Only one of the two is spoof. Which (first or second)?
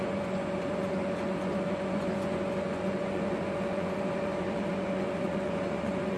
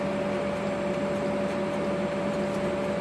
first